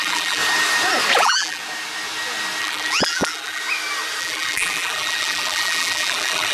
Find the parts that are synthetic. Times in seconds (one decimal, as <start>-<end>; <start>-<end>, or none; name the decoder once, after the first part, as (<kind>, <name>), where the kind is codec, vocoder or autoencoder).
0.0-0.4 (vocoder, BigVGAN v2); 1.2-1.6; 2.6-3.6; 4.2-6.5